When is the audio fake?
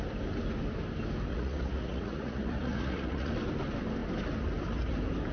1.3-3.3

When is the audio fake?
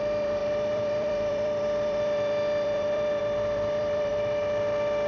0.0-4.1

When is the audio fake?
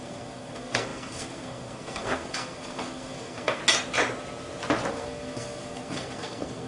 0.0-3.6; 4.9-6.7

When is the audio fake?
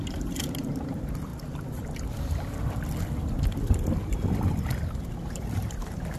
0.0-1.3; 5.0-6.2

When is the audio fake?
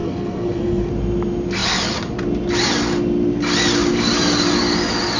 0.0-0.9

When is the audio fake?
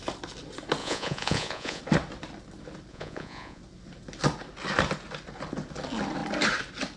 0.8-1.8; 2.9-3.6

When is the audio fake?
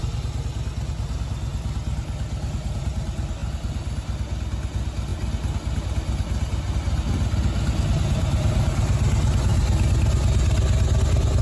none